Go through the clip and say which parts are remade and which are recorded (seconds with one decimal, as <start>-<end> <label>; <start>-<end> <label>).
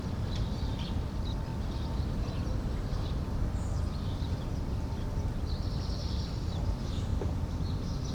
0.0-1.5 remade; 1.5-3.8 recorded; 3.8-7.1 remade; 7.1-8.1 recorded